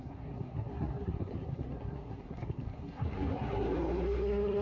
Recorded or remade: remade